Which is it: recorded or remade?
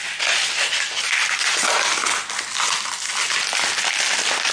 recorded